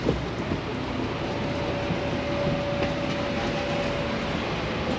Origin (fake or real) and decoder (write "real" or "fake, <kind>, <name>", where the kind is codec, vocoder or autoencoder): real